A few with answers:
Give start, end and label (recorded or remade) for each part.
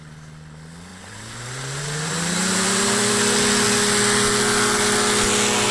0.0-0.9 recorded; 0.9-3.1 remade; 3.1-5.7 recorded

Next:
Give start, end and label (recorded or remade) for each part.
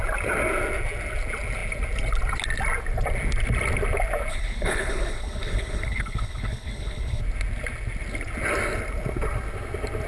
0.0-4.3 recorded; 4.3-7.2 remade; 7.2-10.1 recorded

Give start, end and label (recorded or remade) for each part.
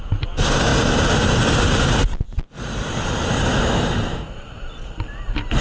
0.0-5.6 recorded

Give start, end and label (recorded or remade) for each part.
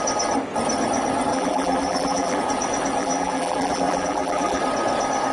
0.0-1.3 recorded; 1.3-2.4 remade; 2.4-3.0 recorded; 3.0-4.6 remade; 4.6-5.3 recorded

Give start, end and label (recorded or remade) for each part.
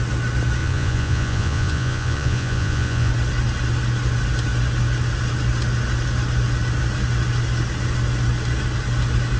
0.0-0.6 recorded; 0.6-3.1 remade; 3.1-9.4 recorded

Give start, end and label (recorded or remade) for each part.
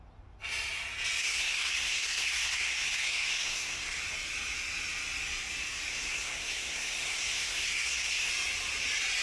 0.0-1.2 recorded; 1.2-4.0 remade; 4.0-5.9 recorded; 5.9-8.3 remade; 8.3-9.2 recorded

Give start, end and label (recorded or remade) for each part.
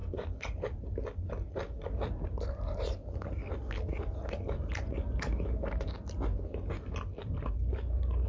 0.0-8.3 recorded